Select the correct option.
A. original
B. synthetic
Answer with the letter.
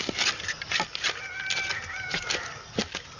A